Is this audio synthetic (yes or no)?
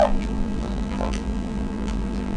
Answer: yes